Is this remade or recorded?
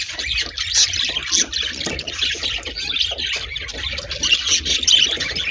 recorded